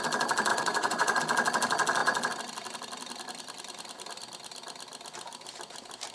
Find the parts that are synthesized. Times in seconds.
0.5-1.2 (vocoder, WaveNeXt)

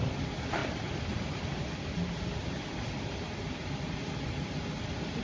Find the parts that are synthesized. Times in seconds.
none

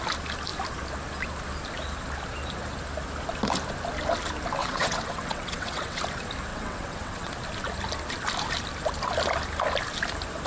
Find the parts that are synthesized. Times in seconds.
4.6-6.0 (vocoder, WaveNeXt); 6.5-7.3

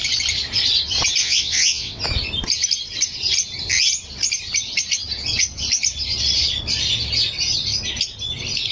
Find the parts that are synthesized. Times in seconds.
1.2-2.0 (vocoder, WaveNeXt)

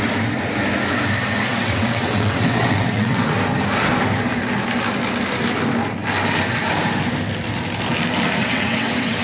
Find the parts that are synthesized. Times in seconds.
1.5-3.3 (vocoder, WaveNeXt); 8.4-9.2

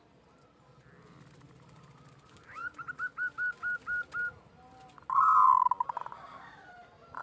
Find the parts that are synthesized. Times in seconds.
none

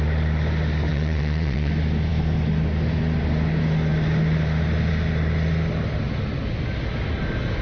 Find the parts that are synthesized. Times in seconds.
0.9-1.7 (vocoder, WaveNeXt)

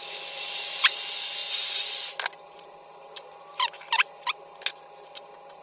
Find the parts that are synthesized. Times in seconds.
none